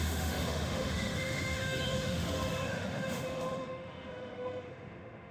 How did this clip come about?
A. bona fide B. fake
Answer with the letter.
B